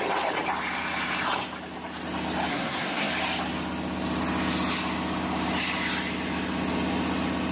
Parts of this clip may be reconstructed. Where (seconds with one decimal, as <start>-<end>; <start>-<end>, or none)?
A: 2.5-3.1